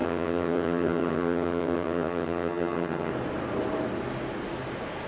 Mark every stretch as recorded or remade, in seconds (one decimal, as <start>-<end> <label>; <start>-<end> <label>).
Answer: 0.0-3.1 remade; 3.1-5.1 recorded